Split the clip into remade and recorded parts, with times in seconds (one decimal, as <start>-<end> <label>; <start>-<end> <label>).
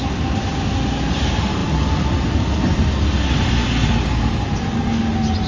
0.0-5.5 recorded